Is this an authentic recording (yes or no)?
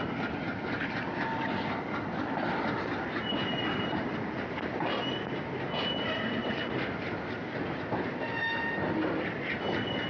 yes